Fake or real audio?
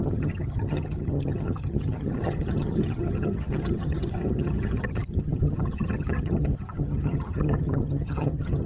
fake